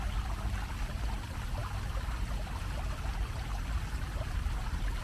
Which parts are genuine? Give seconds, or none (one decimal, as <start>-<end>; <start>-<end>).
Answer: 0.0-5.0